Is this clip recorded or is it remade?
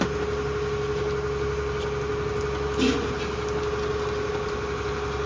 recorded